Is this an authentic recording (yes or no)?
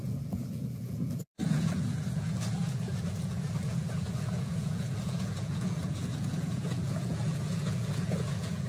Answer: no